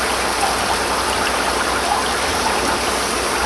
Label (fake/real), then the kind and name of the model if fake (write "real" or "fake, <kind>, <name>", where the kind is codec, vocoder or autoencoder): real